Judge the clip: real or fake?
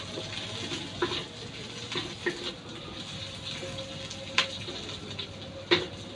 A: real